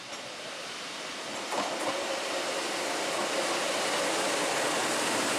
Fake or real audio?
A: real